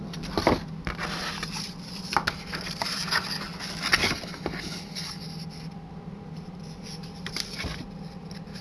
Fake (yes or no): no